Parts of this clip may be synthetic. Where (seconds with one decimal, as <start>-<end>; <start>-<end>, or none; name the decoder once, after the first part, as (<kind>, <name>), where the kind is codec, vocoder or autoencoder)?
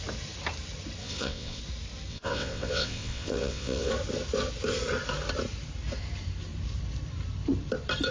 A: 1.0-1.6 (vocoder, WaveNeXt); 2.1-3.9